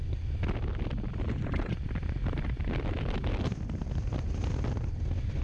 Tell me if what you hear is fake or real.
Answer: real